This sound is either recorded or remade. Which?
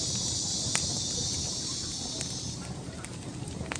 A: recorded